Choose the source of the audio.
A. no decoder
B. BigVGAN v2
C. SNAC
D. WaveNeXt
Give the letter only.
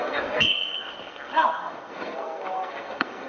C